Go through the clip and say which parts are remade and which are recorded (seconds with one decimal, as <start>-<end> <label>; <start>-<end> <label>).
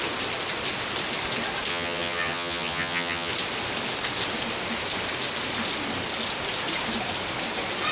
0.0-1.7 recorded; 1.7-3.3 remade; 3.3-7.9 recorded